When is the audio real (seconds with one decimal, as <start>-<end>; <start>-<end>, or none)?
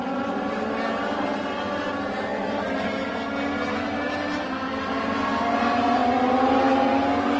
0.0-7.4